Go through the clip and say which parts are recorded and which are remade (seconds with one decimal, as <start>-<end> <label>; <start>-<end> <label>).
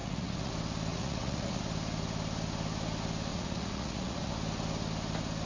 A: 0.0-0.5 remade; 0.5-0.9 recorded; 0.9-1.6 remade; 1.6-3.3 recorded; 3.3-4.3 remade; 4.3-5.5 recorded